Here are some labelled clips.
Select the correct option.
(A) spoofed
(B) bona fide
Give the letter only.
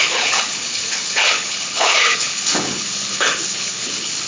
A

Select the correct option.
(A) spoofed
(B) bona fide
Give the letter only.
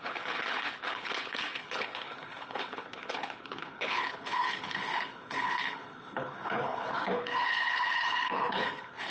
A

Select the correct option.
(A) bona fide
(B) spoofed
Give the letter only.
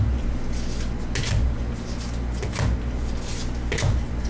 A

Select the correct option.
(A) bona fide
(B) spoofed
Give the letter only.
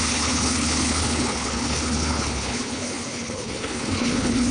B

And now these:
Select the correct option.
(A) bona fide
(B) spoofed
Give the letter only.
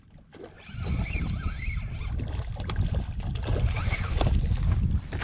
A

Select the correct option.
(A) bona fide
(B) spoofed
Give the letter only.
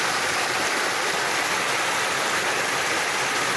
A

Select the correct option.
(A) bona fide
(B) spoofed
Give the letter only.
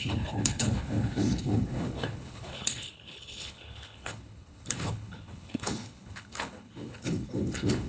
B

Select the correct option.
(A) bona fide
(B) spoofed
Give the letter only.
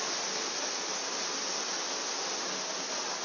A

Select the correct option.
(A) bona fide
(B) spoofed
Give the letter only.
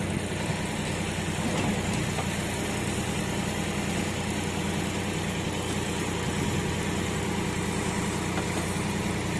A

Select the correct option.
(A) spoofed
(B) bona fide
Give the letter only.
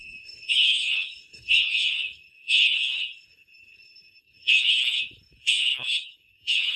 A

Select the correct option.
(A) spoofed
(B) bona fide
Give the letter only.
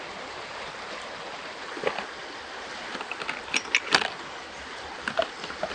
B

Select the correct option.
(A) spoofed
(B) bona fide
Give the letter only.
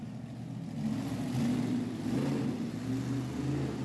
B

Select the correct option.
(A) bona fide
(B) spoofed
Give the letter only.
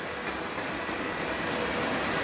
A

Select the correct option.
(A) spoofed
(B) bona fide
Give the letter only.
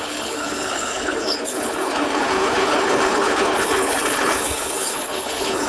A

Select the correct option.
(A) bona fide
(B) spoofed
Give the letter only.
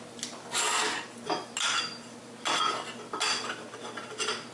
A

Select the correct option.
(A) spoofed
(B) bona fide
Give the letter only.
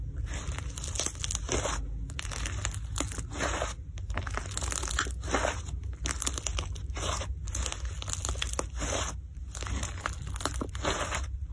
B